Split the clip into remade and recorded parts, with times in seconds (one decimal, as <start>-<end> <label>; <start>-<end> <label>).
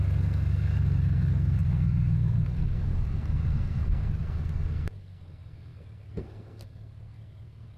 0.0-7.8 remade